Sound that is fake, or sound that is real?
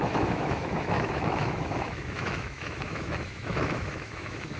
fake